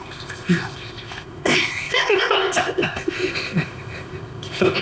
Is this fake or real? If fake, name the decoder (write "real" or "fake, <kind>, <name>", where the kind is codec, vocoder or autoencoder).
fake, codec, ZipCodec